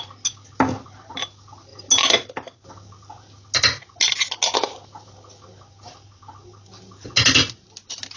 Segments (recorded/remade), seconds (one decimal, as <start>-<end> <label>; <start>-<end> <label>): 0.0-8.2 recorded